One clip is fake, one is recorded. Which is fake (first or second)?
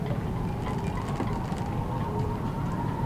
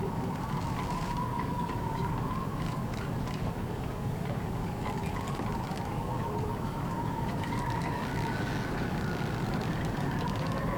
second